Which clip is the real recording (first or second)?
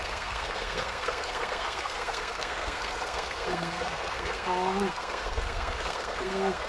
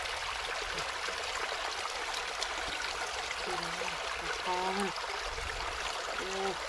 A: second